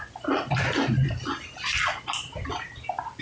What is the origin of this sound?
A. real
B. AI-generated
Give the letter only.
A